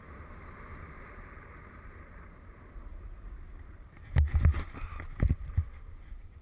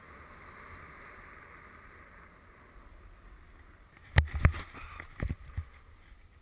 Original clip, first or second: second